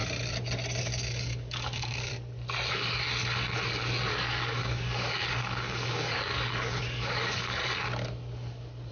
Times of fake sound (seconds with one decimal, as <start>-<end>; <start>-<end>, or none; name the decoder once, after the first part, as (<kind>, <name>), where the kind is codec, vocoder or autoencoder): 0.8-2.1 (codec, DAC); 4.1-7.6

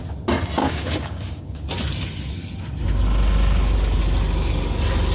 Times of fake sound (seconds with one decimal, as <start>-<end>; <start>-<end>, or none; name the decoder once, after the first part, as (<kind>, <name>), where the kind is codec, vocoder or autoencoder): 0.6-1.6 (codec, DAC)

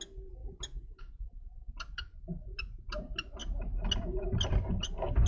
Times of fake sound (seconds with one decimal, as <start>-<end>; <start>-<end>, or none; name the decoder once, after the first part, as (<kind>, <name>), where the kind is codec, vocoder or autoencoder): none